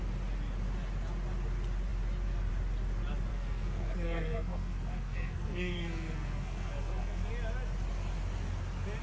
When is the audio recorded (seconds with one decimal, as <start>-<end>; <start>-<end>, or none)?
0.0-3.3; 7.3-9.0